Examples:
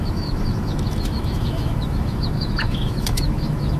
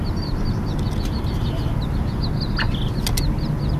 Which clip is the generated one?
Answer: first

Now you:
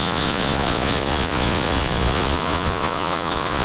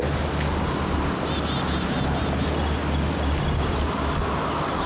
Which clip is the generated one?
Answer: first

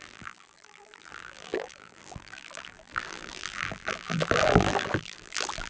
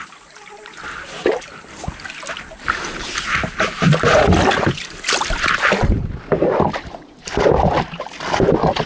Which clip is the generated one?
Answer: first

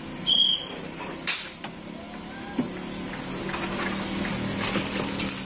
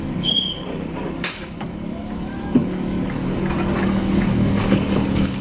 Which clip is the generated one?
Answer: second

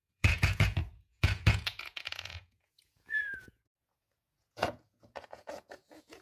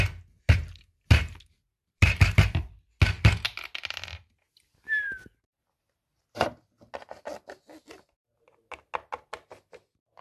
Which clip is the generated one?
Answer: first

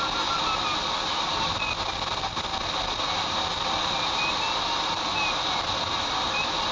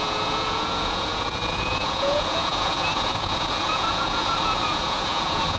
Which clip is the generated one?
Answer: second